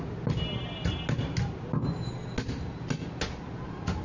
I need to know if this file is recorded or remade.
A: recorded